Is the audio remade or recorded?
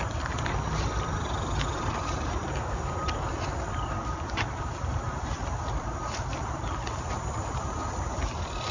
remade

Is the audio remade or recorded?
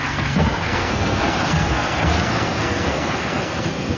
remade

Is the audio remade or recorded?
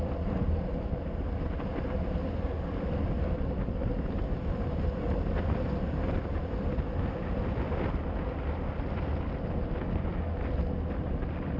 recorded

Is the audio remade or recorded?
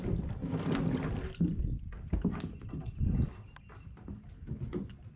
recorded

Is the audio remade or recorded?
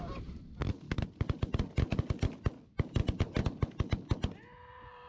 recorded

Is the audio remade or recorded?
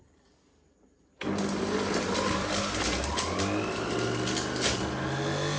recorded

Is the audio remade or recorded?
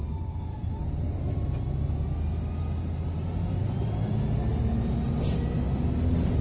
recorded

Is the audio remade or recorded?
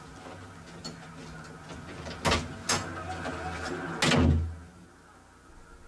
recorded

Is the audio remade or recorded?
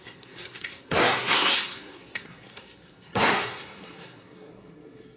remade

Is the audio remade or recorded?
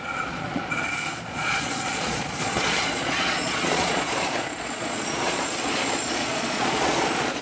remade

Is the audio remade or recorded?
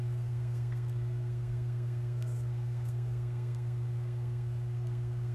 remade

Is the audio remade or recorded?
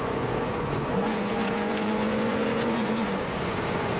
remade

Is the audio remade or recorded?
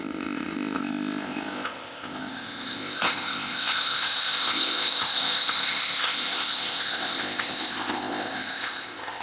remade